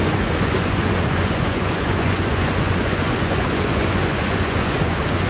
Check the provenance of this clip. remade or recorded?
remade